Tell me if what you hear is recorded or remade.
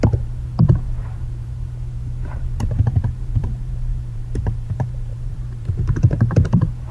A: remade